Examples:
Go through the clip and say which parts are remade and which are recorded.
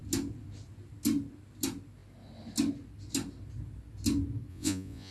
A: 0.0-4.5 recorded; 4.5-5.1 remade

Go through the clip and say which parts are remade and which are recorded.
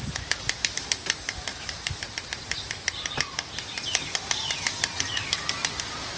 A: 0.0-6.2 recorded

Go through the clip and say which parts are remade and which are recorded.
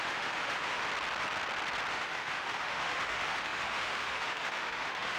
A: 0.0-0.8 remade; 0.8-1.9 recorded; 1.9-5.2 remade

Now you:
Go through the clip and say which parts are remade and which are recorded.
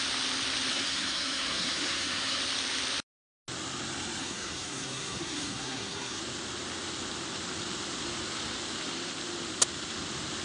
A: 0.0-0.7 recorded; 0.7-2.4 remade; 2.4-4.2 recorded; 4.2-6.2 remade; 6.2-10.4 recorded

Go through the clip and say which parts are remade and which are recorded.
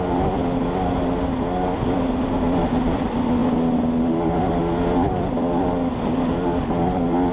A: 0.0-7.3 recorded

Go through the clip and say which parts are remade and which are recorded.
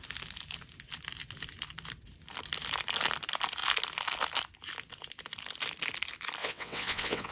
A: 0.0-6.4 recorded; 6.4-7.3 remade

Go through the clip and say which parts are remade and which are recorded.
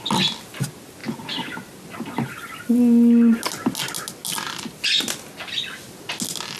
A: 0.0-6.6 recorded